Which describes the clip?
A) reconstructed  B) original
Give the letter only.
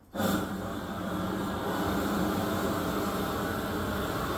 B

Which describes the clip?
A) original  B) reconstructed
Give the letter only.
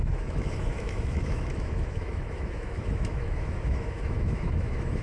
B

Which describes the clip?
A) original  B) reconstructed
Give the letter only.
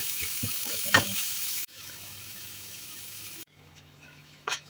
B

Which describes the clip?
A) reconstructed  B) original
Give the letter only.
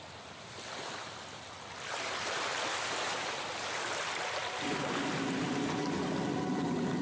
B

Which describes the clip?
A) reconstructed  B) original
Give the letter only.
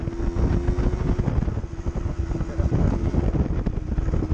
B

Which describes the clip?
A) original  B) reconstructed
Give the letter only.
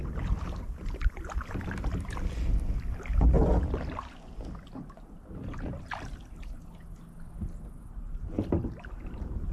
A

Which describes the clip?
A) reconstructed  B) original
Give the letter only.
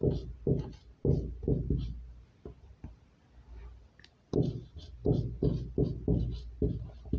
B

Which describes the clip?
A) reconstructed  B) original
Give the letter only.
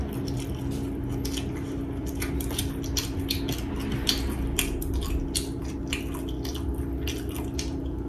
B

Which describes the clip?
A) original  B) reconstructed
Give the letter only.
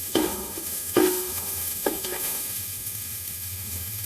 B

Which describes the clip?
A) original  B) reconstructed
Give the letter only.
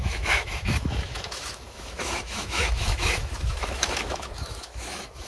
B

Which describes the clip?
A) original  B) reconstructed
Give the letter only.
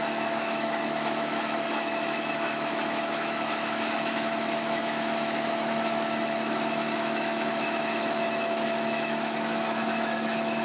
B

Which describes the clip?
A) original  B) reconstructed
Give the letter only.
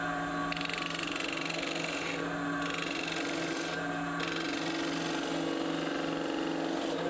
A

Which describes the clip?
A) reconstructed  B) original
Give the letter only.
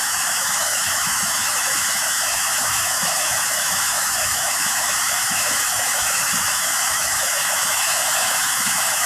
A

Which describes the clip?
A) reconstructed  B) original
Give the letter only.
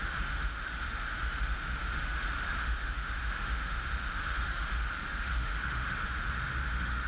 A